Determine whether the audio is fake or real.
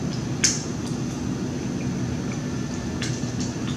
real